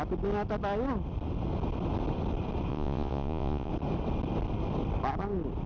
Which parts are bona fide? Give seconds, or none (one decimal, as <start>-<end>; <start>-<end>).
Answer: 0.0-2.7; 3.7-5.7